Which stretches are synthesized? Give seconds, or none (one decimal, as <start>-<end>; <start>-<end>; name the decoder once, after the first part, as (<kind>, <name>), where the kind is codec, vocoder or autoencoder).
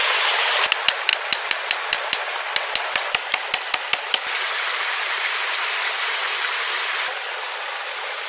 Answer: 1.1-5.5 (vocoder, BigVGAN v2); 6.2-8.3